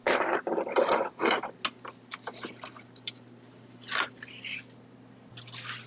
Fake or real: real